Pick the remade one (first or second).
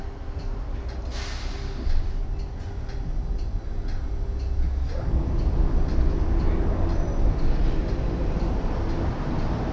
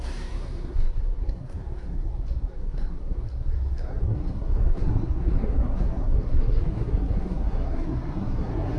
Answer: second